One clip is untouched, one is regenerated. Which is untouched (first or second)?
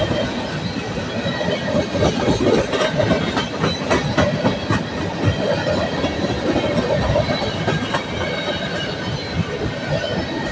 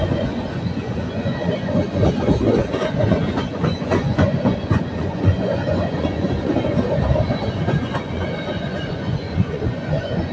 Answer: first